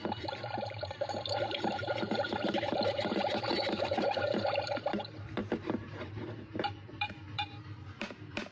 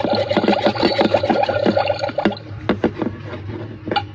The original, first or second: second